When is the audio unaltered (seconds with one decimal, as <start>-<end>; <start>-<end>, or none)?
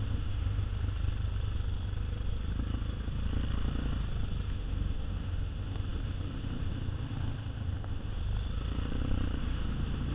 0.7-4.5; 8.2-9.4